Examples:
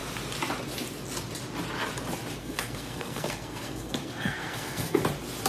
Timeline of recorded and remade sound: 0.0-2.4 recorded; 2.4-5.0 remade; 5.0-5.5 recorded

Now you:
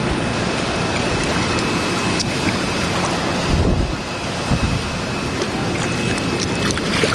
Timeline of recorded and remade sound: 0.0-5.6 remade; 5.6-6.3 recorded; 6.3-7.1 remade